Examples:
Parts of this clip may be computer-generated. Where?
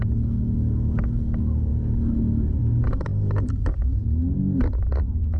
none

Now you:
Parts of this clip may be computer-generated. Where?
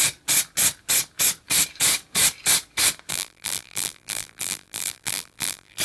3.1-5.8 (vocoder, BigVGAN v2)